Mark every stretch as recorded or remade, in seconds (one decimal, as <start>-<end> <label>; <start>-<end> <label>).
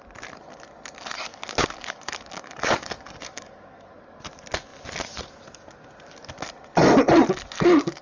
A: 0.0-1.3 recorded; 1.3-4.0 remade; 4.0-8.0 recorded